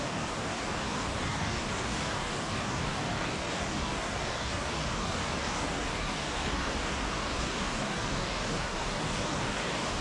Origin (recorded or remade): remade